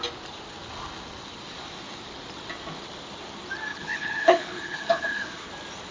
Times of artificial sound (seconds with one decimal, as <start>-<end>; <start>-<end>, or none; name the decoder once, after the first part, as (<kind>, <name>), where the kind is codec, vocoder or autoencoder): 3.7-5.5 (codec, HILCodec)